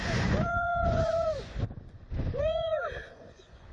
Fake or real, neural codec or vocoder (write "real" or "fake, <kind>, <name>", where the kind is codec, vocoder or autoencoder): fake, vocoder, Vocos